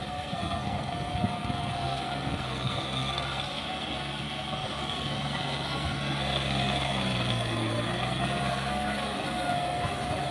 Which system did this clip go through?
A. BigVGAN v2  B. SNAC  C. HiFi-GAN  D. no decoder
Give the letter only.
B